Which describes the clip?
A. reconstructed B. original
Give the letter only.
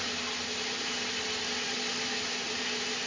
B